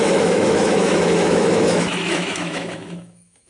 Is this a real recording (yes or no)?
no